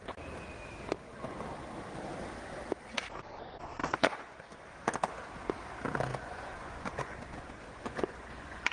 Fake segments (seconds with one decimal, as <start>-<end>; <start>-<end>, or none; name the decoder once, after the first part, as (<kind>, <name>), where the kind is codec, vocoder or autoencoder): 3.8-4.4 (vocoder, Vocos); 6.1-8.7